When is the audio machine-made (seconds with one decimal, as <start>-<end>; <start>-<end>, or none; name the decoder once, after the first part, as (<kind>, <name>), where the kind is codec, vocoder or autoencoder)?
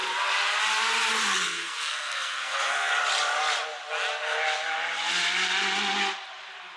1.4-2.9 (codec, SNAC)